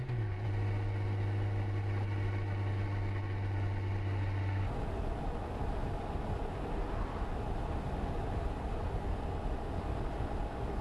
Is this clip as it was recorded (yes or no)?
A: yes